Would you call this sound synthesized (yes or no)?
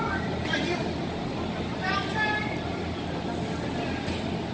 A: no